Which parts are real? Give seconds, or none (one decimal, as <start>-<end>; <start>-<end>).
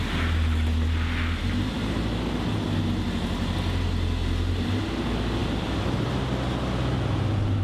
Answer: 0.0-5.4; 6.2-7.6